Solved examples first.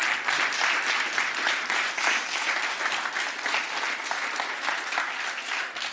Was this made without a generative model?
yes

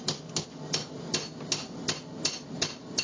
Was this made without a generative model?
yes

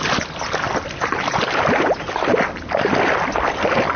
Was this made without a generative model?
yes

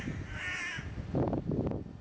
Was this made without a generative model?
yes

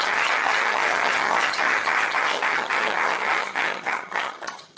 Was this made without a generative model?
no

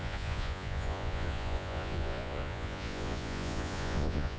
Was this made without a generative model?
no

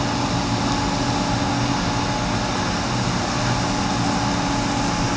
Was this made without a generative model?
yes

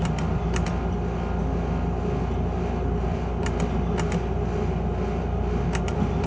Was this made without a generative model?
yes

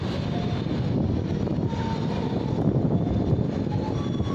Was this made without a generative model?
yes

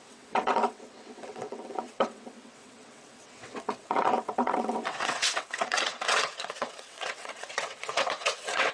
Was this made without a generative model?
no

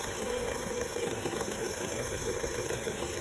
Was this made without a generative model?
no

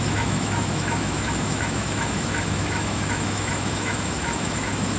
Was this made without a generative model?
no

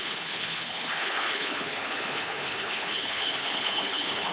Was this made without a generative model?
no